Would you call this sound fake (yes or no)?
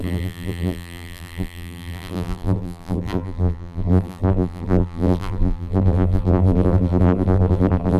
yes